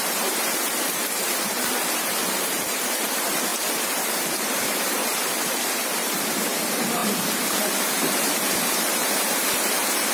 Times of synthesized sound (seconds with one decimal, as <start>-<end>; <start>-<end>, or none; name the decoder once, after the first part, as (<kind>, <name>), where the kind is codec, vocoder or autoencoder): 0.0-10.1 (vocoder, BigVGAN v2)